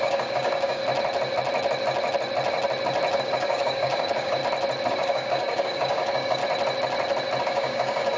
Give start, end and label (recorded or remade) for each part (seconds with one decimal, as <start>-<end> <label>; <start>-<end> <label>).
0.0-0.8 remade; 0.8-3.2 recorded; 3.2-4.4 remade; 4.4-4.9 recorded; 4.9-6.4 remade; 6.4-7.4 recorded; 7.4-8.2 remade